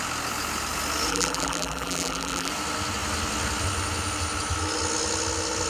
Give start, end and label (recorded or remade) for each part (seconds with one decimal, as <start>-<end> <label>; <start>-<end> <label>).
0.0-1.1 recorded; 1.1-2.5 remade; 2.5-5.7 recorded